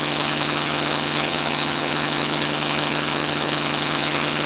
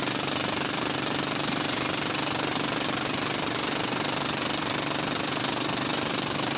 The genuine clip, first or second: second